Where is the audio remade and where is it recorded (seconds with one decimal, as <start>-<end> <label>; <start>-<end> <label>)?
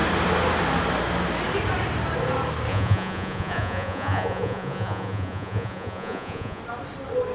0.0-2.7 recorded; 2.7-6.6 remade; 6.6-7.3 recorded